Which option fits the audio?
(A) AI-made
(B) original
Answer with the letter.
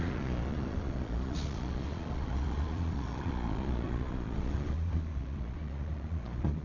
A